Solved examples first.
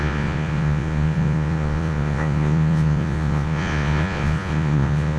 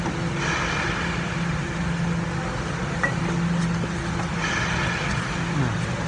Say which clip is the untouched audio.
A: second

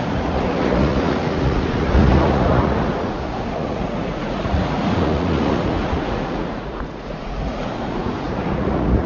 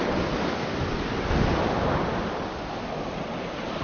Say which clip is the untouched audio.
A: second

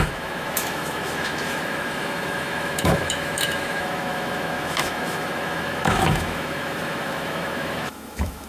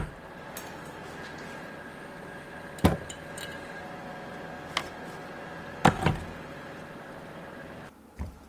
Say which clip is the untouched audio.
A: second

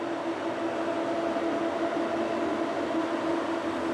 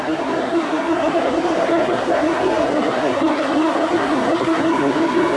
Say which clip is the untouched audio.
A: first